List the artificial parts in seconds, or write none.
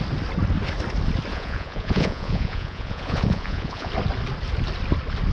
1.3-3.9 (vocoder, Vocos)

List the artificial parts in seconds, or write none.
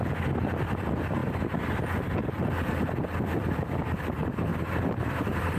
4.5-5.6 (vocoder, BigVGAN v2)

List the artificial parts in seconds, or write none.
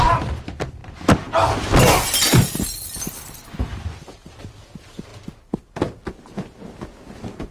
0.0-0.8 (vocoder, BigVGAN v2); 4.3-5.1; 7.1-7.5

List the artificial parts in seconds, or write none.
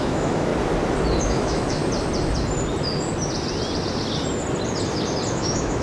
0.0-0.5 (autoencoder, DAC-VAE); 1.2-1.8; 5.3-5.8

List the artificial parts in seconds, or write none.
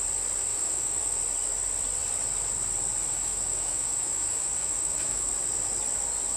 0.5-1.2 (autoencoder, DAC-VAE); 3.1-5.3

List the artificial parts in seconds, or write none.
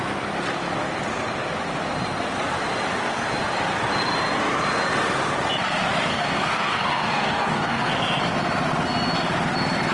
6.1-7.9 (codec, DAC)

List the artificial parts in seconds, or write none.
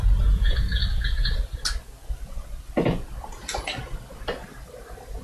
none